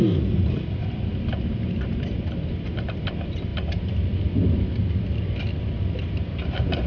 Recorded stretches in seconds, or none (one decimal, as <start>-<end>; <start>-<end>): 0.0-6.9